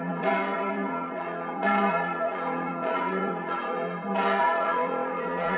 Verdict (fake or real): fake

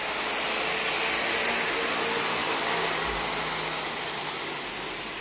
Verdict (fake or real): real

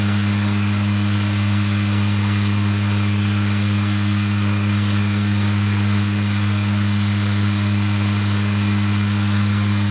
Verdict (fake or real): fake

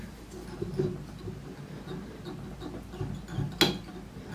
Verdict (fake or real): real